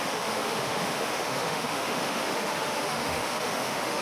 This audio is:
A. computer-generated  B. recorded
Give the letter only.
A